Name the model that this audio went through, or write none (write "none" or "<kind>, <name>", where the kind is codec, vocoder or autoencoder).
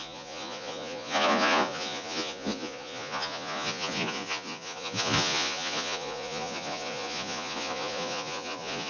vocoder, Vocos